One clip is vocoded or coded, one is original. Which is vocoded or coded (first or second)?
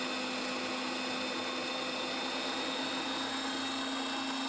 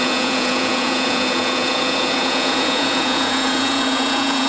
second